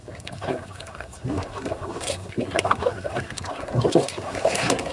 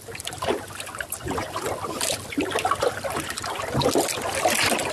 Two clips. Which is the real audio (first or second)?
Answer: second